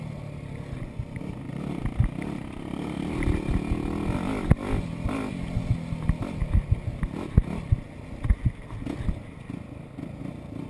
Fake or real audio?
real